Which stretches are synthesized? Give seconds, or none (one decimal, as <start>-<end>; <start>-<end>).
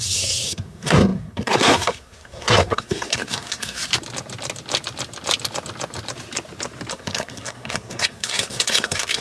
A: 0.0-3.8; 6.9-9.2